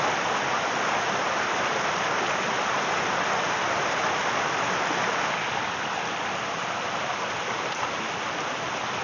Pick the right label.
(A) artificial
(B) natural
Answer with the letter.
B